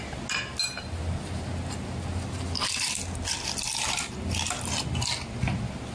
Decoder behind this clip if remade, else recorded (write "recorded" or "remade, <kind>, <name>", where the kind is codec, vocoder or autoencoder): recorded